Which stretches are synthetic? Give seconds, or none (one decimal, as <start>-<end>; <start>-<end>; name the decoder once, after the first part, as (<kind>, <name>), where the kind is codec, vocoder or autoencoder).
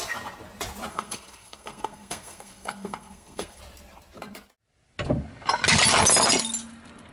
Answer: 0.9-3.6 (codec, SNAC)